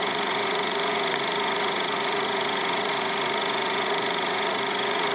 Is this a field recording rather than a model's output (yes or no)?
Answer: no